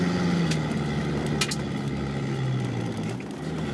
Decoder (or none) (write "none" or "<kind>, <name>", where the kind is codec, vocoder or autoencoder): none